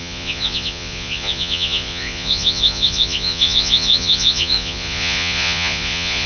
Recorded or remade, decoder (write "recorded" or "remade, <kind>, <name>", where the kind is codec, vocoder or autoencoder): remade, vocoder, Vocos